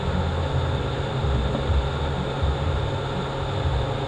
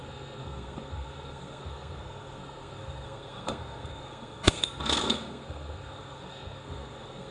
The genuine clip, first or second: first